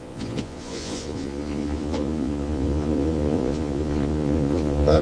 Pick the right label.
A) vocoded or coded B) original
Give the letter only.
A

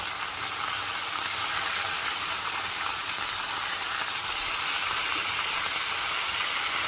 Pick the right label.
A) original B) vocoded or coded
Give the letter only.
A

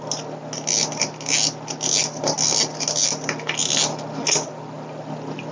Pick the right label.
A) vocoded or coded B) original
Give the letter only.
B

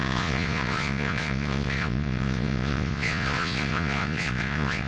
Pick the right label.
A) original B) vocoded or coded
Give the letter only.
B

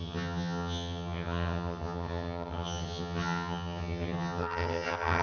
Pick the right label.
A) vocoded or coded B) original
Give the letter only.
A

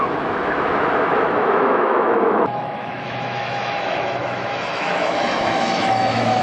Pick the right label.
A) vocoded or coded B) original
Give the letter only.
A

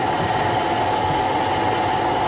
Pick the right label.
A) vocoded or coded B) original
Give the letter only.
B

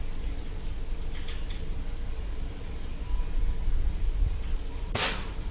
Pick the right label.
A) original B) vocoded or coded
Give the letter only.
A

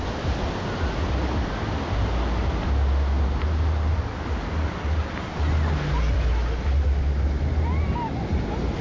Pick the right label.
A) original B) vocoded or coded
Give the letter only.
A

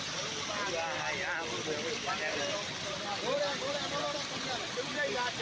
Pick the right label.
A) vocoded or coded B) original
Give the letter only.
B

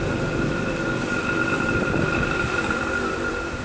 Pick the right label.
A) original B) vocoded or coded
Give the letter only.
B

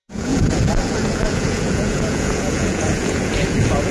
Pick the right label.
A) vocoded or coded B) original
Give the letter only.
A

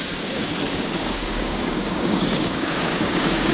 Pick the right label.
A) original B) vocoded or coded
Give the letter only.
B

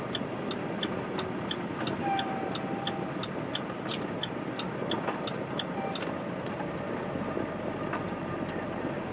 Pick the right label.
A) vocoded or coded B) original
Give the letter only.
B